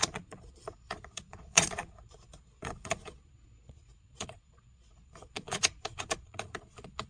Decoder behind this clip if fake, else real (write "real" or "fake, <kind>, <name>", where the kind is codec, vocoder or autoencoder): fake, vocoder, Vocos